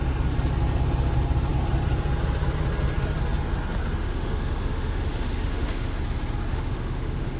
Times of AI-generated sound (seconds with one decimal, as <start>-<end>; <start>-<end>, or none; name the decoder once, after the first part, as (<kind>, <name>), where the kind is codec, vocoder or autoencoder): 4.0-6.0 (autoencoder, DAC-VAE); 6.5-7.4